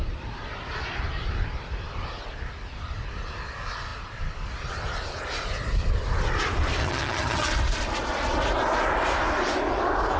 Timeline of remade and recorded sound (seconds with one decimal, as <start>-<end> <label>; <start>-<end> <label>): 0.0-6.8 recorded; 6.8-7.5 remade; 7.5-10.2 recorded